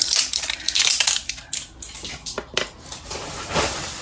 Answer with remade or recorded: remade